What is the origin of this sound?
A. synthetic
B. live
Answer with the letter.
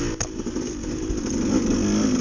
B